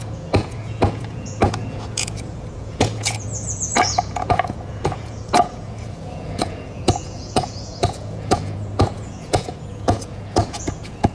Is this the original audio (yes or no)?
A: no